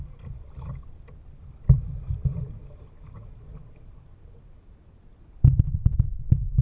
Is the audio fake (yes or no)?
no